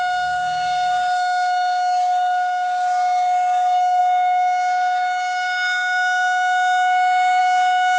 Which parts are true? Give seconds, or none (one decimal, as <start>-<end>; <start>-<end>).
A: none